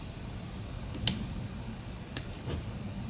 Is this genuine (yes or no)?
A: yes